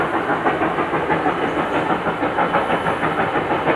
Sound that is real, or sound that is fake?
real